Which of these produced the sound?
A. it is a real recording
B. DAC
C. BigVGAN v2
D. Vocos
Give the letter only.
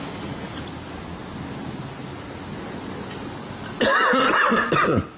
A